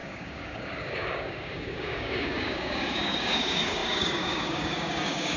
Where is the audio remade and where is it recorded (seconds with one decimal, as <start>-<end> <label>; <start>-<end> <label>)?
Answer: 0.0-5.4 remade